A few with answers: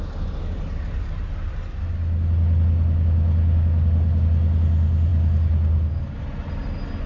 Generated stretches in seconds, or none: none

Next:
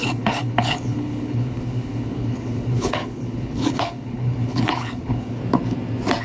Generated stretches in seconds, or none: 0.0-5.4 (codec, HILCodec)

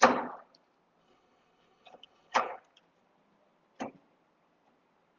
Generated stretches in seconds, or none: 1.0-2.6 (codec, HILCodec)

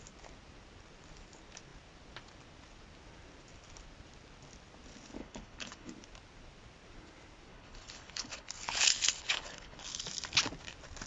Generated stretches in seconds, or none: 5.2-5.9 (codec, HILCodec); 7.5-10.0

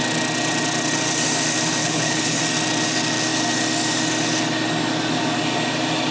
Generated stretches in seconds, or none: 1.8-2.4 (codec, HILCodec)

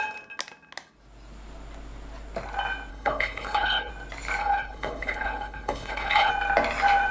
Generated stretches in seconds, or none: 2.9-3.9 (codec, HILCodec); 4.4-6.3

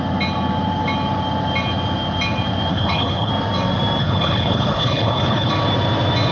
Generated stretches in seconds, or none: 2.7-3.3 (codec, HILCodec); 4.0-5.5

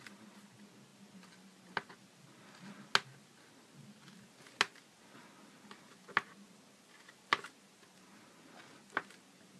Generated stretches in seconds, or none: none